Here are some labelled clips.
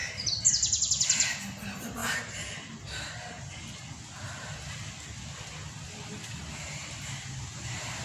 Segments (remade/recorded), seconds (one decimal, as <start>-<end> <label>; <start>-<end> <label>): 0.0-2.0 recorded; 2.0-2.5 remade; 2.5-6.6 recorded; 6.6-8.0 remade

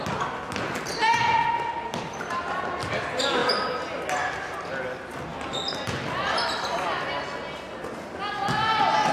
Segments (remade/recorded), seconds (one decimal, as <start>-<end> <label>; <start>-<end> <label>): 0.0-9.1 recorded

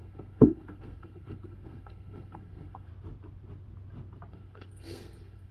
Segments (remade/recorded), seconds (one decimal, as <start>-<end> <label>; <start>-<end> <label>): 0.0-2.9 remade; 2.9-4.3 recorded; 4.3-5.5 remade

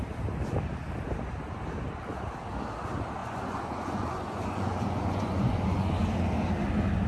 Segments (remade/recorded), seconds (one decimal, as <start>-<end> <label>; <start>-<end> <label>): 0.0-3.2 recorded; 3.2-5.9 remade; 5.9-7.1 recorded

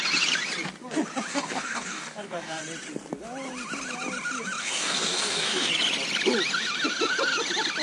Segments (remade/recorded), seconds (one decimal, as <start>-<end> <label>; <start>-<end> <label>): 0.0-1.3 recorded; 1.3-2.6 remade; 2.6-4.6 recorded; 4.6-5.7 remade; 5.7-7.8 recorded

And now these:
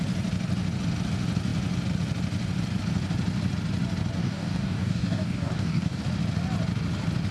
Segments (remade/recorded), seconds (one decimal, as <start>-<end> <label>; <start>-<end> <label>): 0.0-4.2 recorded; 4.2-6.0 remade; 6.0-7.3 recorded

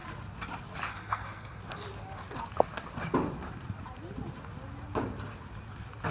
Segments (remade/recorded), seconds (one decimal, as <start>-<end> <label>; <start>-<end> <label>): 0.0-0.9 recorded; 0.9-1.6 remade; 1.6-6.1 recorded